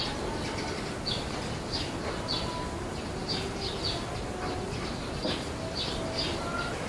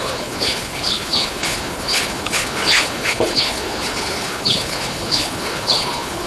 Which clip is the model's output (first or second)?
second